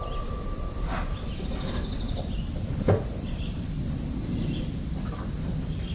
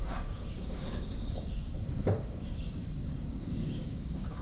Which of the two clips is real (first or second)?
first